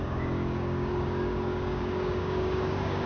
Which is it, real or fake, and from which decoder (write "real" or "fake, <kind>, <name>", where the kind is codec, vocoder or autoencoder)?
fake, codec, DAC